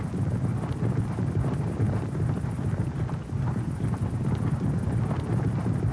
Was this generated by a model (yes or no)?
no